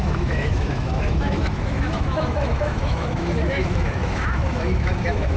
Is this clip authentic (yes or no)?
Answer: no